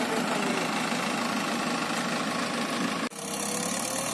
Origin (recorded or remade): recorded